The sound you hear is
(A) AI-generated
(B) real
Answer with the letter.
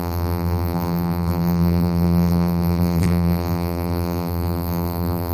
A